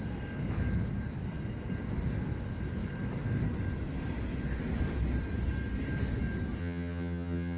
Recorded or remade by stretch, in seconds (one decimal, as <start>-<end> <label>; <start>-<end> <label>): 0.0-6.6 recorded; 6.6-7.6 remade